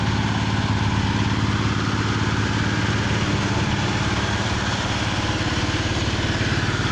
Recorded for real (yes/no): yes